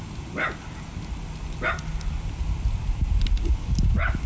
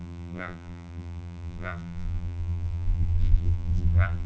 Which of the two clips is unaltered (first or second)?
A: first